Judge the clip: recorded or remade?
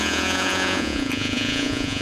remade